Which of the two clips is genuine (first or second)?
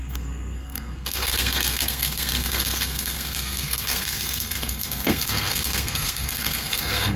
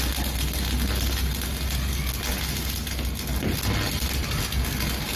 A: second